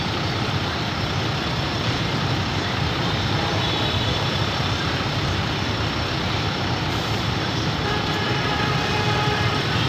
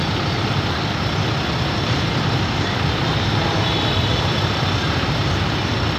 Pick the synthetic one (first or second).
first